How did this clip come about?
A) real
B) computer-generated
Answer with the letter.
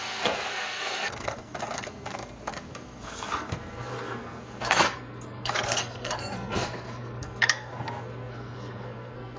B